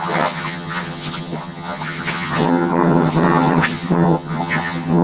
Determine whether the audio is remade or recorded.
remade